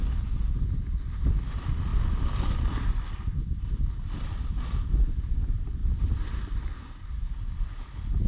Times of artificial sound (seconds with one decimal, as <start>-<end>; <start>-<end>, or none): none